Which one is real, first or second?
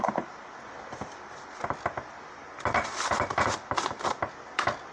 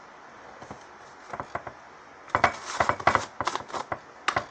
second